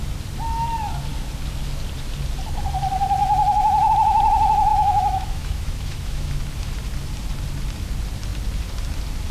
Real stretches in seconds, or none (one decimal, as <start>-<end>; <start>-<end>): 0.0-4.7; 6.4-9.3